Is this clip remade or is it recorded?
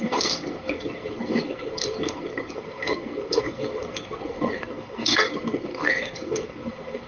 remade